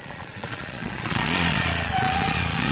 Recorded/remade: remade